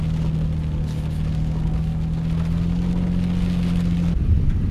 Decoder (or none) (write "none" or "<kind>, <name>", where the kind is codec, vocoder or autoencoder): none